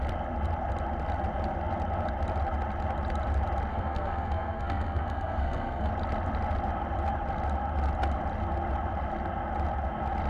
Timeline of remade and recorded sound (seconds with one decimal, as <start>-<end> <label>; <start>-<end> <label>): 0.0-3.7 recorded; 3.7-5.9 remade; 5.9-10.3 recorded